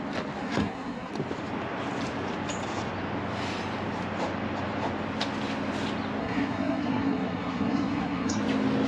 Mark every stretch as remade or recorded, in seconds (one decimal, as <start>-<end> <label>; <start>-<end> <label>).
0.0-0.4 recorded; 0.4-1.1 remade; 1.1-6.2 recorded; 6.2-8.4 remade; 8.4-8.9 recorded